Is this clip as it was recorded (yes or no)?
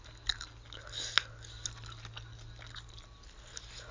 yes